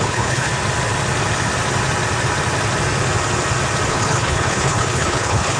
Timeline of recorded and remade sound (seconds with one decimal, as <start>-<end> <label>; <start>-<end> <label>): 0.0-0.5 remade; 0.5-3.9 recorded; 3.9-5.6 remade